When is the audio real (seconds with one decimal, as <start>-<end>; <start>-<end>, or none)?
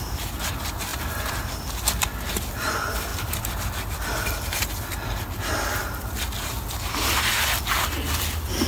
0.0-8.7